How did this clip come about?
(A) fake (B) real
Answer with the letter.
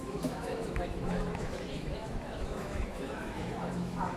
A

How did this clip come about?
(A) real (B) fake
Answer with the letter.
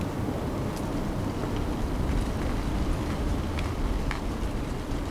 A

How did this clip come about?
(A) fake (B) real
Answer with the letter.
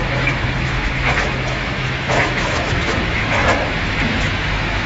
A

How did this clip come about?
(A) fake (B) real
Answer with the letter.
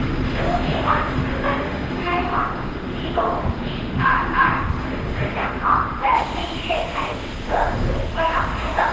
A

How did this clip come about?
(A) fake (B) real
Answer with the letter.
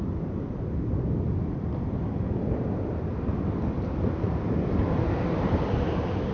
B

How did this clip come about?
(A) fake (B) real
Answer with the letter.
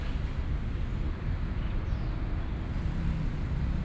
B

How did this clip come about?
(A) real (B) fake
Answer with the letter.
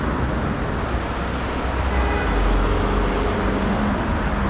A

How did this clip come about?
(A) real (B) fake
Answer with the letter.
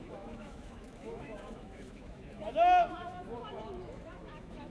B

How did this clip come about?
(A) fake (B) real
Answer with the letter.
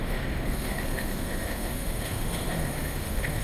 A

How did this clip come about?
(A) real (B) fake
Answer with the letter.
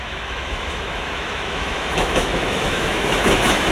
B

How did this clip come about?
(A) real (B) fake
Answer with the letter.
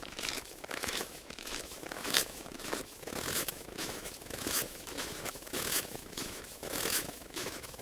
B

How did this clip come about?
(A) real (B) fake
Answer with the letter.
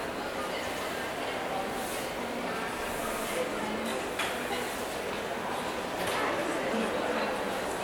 A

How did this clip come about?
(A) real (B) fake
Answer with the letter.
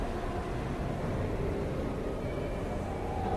A